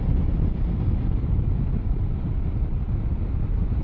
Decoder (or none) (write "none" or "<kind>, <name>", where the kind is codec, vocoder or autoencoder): none